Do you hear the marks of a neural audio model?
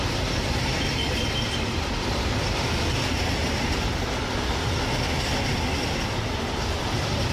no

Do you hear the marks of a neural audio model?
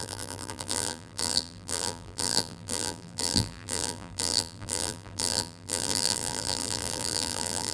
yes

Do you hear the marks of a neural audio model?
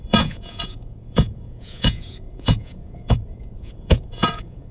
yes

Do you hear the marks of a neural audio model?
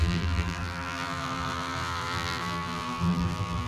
yes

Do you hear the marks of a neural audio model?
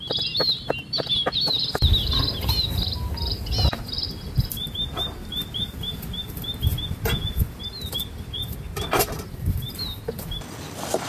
no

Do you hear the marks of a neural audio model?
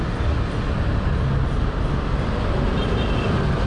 no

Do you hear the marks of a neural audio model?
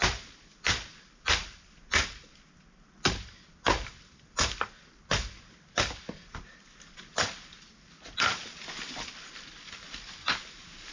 no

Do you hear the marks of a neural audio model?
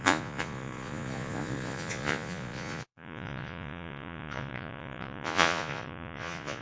yes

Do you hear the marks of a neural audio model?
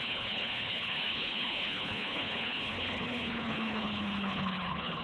yes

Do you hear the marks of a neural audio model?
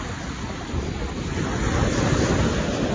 no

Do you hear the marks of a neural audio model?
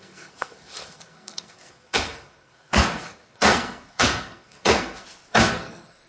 yes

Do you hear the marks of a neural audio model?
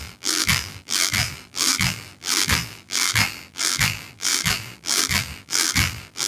yes